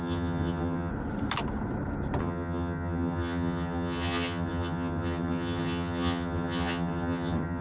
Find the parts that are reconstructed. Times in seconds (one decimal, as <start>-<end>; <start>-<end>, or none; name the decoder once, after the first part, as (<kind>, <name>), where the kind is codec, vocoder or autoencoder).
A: 0.0-0.9 (vocoder, HiFi-GAN); 2.2-7.6